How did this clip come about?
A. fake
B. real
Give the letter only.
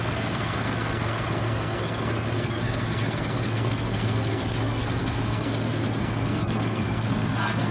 A